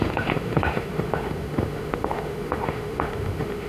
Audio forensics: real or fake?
fake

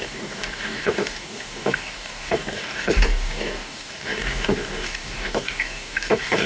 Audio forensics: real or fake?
fake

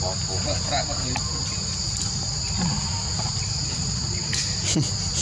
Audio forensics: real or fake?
real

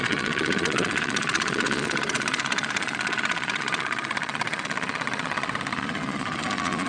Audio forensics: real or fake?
fake